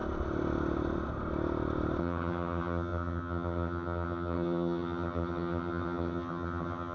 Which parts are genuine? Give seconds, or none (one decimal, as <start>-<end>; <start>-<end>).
0.0-2.0